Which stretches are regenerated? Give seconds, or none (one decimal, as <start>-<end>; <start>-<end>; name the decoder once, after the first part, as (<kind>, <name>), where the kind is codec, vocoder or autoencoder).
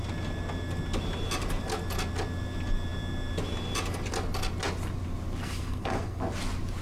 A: 5.4-6.2 (codec, SNAC)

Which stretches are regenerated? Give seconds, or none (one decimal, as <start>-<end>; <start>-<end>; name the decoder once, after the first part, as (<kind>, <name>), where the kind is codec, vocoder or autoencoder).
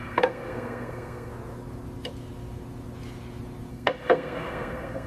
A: 0.0-1.3 (codec, SNAC); 3.7-5.1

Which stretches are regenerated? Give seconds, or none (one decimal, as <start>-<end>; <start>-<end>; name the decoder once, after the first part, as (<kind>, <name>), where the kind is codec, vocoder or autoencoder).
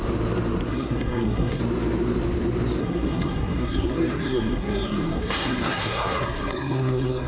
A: 0.7-1.6 (codec, SNAC); 2.8-7.3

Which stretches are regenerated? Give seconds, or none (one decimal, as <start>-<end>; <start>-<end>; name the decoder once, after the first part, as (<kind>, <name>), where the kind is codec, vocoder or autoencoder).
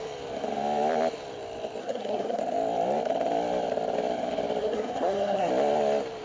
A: 1.8-2.4 (codec, SNAC); 4.6-5.5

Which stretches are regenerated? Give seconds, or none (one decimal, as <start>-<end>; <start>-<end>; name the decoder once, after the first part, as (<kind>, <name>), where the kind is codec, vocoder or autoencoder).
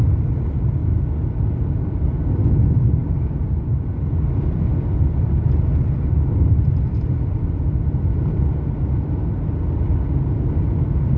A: none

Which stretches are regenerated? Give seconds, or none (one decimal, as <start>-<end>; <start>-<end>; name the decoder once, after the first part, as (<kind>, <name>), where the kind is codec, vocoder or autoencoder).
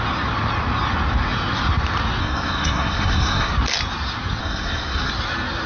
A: 2.2-3.5 (codec, SNAC); 4.4-5.1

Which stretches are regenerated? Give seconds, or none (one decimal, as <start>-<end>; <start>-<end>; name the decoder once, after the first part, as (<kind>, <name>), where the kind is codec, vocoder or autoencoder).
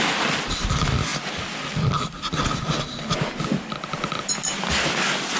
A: none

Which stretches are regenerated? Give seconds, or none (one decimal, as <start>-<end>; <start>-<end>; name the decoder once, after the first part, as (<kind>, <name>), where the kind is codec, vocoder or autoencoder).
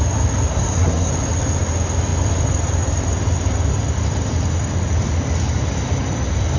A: 0.5-1.1 (codec, SNAC)